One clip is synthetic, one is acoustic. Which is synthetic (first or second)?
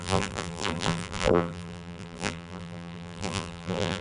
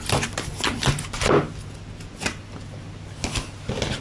first